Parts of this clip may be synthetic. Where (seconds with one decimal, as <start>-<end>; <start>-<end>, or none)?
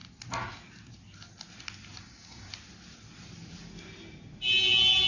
2.0-2.5